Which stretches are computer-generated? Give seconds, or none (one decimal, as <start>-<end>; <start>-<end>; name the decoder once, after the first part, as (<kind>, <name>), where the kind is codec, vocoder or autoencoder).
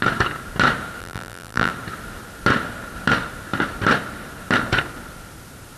1.0-1.7 (vocoder, BigVGAN v2)